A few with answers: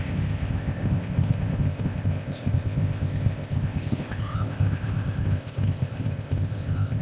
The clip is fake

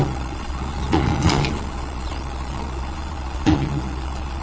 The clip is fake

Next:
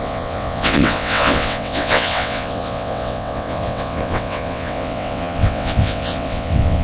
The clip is fake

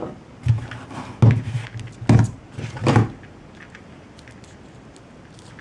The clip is real